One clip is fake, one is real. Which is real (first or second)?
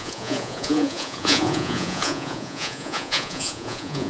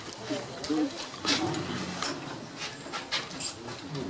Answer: second